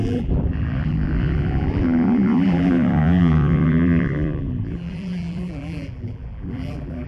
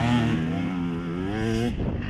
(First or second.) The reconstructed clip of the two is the first